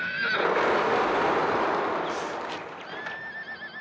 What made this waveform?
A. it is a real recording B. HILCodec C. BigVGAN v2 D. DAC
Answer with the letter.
A